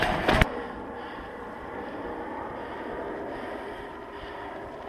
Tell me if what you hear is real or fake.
fake